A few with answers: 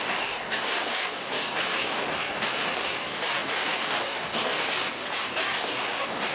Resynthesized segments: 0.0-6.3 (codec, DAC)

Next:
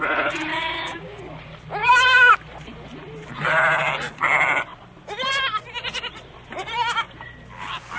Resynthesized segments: 0.5-1.2 (codec, DAC); 1.8-2.3